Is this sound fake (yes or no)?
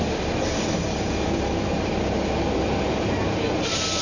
no